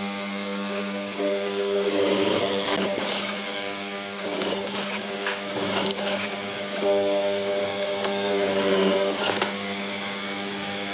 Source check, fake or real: fake